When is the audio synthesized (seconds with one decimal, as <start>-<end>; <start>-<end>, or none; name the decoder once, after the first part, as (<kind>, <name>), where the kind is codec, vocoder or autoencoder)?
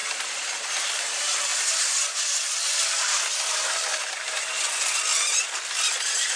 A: none